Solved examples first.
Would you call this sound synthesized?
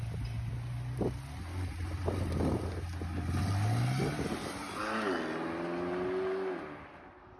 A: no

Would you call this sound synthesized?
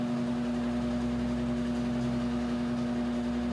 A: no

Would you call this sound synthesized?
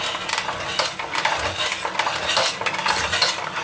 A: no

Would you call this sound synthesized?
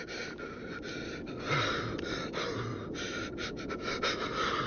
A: no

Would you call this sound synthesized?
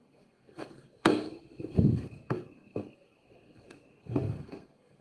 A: yes